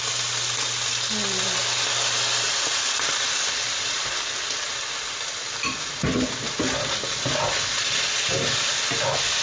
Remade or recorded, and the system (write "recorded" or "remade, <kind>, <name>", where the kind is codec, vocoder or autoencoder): recorded